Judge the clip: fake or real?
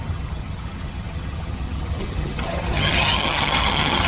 fake